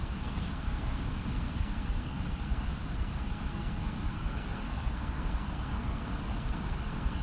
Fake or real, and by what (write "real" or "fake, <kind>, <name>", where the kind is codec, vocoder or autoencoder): fake, codec, SNAC